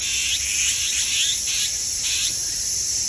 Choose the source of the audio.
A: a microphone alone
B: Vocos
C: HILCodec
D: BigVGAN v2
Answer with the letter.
A